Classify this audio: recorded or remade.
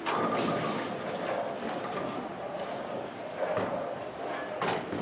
recorded